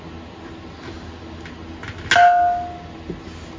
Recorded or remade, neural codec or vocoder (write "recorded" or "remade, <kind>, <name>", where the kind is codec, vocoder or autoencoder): recorded